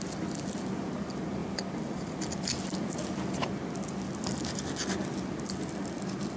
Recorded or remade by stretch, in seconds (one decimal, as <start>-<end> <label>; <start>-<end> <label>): 0.0-6.4 recorded